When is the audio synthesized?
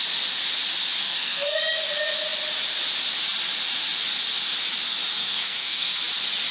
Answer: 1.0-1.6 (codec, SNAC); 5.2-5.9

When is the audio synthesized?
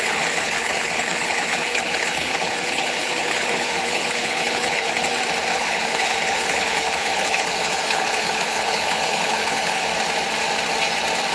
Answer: 0.0-5.0 (codec, HILCodec); 5.5-9.9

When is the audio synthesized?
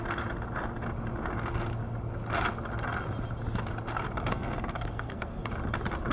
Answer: 4.3-5.5 (codec, SNAC)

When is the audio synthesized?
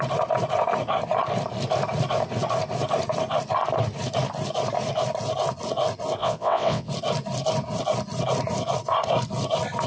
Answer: 6.2-6.9 (vocoder, WaveNeXt)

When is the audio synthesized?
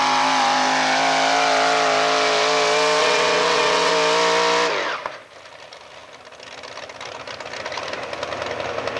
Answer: 3.0-3.9 (vocoder, WaveNeXt)